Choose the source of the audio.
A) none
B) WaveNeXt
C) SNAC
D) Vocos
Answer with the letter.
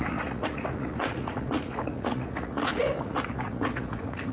D